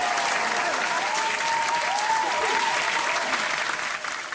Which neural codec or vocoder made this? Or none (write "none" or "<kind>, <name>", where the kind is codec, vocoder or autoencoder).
vocoder, BigVGAN v2